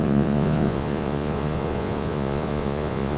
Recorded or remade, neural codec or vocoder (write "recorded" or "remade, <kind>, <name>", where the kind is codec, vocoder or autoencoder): remade, vocoder, Vocos